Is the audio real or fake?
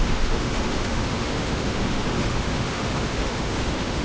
fake